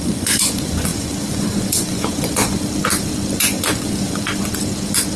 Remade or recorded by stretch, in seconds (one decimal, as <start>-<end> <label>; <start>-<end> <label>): 0.0-2.5 remade; 2.5-3.4 recorded; 3.4-4.3 remade; 4.3-5.2 recorded

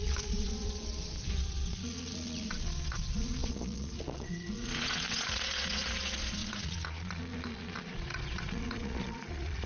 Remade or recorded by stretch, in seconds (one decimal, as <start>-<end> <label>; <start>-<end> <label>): 0.0-9.7 remade

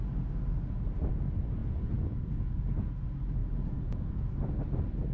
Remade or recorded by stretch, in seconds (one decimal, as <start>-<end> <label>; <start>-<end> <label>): 0.0-1.6 recorded; 1.6-2.9 remade; 2.9-3.4 recorded; 3.4-4.3 remade; 4.3-5.1 recorded

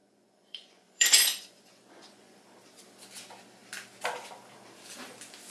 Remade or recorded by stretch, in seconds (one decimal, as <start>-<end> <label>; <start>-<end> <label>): 0.0-2.4 remade; 2.4-5.5 recorded

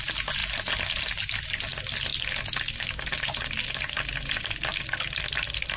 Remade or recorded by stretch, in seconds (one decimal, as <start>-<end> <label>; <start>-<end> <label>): 0.0-5.8 recorded

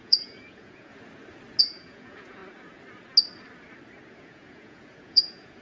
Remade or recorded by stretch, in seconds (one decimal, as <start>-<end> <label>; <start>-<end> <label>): 0.0-0.9 remade; 0.9-1.6 recorded; 1.6-2.4 remade; 2.4-4.1 recorded; 4.1-5.6 remade

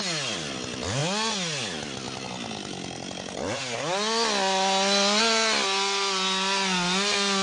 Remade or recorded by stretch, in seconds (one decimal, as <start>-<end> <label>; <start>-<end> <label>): 0.0-7.4 recorded